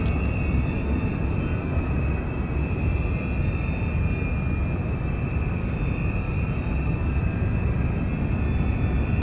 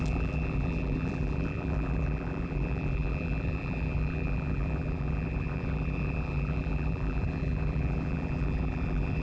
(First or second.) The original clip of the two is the first